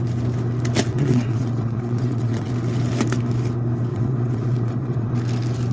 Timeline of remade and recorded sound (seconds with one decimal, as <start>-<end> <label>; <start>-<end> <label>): 0.0-0.9 recorded; 0.9-2.5 remade; 2.5-3.9 recorded; 3.9-5.1 remade; 5.1-5.7 recorded